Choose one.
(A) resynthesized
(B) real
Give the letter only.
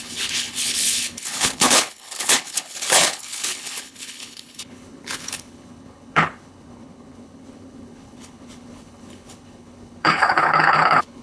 A